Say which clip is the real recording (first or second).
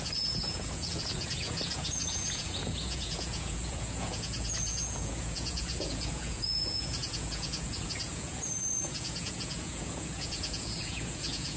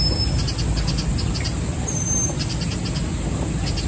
second